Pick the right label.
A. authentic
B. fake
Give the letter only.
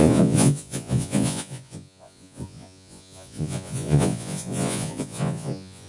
B